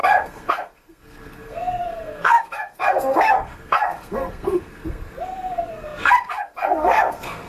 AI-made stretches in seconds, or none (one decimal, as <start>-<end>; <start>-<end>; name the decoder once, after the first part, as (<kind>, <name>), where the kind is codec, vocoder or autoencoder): 0.0-7.5 (codec, SNAC)